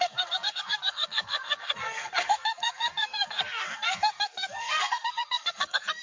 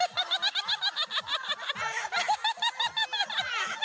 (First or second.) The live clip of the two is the second